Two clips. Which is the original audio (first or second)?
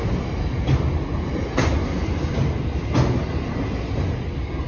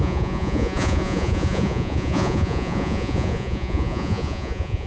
first